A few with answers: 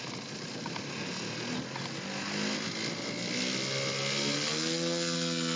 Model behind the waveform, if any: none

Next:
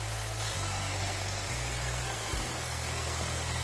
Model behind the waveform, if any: codec, SNAC